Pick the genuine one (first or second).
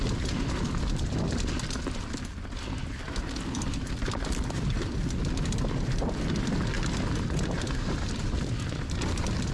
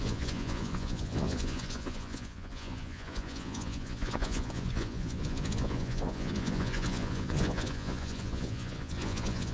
first